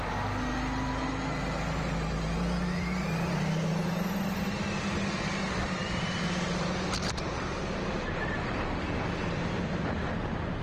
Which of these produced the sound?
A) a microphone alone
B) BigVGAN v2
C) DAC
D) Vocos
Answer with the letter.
A